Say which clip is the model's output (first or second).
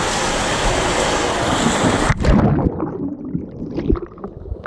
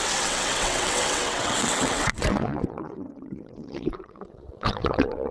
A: second